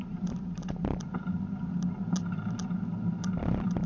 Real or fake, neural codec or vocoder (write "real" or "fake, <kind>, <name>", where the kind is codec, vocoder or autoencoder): real